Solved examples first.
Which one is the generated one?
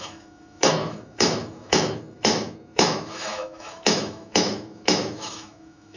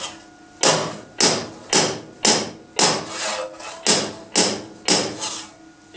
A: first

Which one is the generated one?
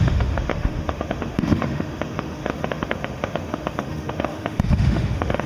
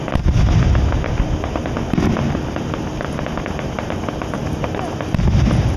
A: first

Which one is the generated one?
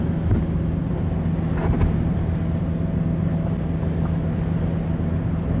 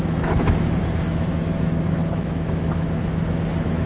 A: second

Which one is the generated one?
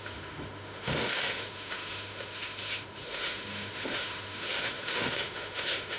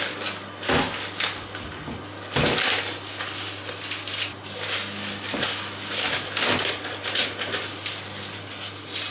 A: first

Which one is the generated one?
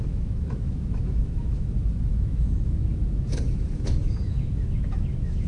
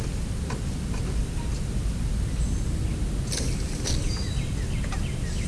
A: first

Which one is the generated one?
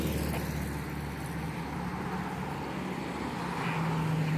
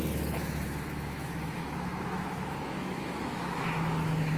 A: second